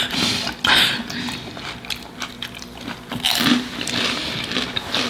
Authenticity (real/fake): real